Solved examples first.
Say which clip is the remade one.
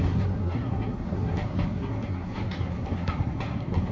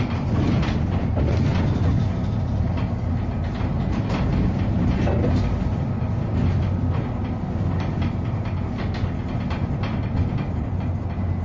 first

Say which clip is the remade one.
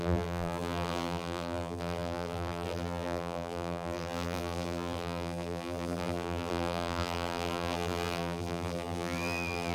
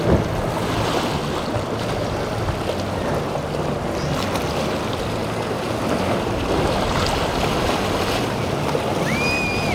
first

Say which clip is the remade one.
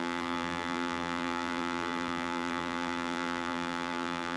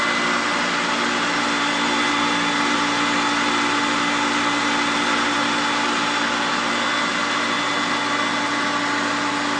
first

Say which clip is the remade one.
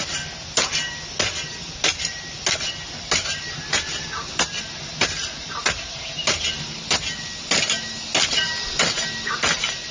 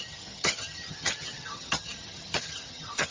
second